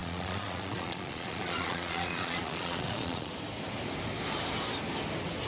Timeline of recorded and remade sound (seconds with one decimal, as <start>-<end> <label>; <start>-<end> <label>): 0.0-3.3 remade; 3.3-5.5 recorded